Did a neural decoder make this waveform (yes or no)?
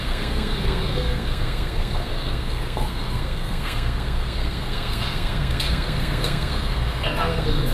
yes